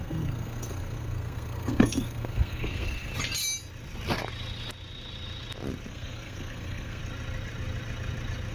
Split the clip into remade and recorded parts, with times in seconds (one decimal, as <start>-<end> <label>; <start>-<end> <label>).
0.0-3.1 remade; 3.1-5.9 recorded; 5.9-7.0 remade; 7.0-8.5 recorded